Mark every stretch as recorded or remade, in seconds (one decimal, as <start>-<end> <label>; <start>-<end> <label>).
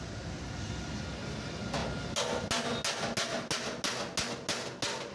0.0-5.1 recorded